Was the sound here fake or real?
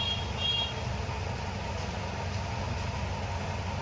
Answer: real